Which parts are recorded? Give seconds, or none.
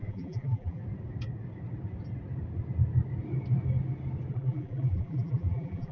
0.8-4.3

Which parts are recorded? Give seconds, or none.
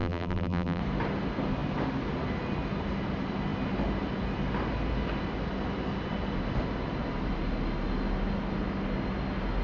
0.8-9.6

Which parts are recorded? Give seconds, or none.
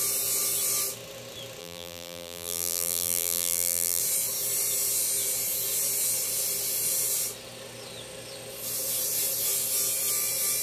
0.0-1.6; 4.0-10.6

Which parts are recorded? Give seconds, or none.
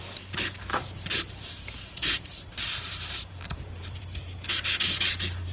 0.0-0.7; 4.0-5.5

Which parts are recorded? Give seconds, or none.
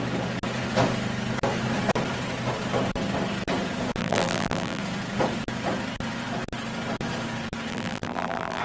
0.0-4.0; 4.8-7.7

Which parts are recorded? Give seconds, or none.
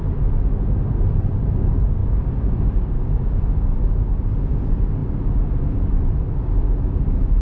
1.5-2.0; 3.4-7.4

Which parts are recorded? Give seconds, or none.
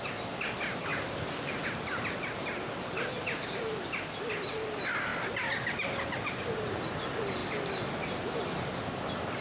0.0-0.9; 1.5-9.4